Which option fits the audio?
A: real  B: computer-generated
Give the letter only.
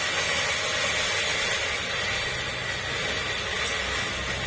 A